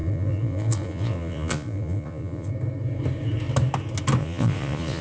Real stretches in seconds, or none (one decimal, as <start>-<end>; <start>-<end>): 2.5-4.2